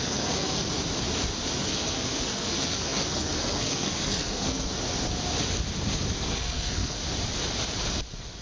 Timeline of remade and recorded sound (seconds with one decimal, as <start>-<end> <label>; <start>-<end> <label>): 0.0-0.6 remade; 0.6-1.6 recorded; 1.6-4.7 remade; 4.7-6.1 recorded; 6.1-7.0 remade; 7.0-8.4 recorded